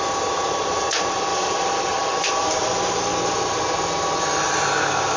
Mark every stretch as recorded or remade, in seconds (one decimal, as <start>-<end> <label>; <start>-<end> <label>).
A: 0.0-3.1 remade; 3.1-5.2 recorded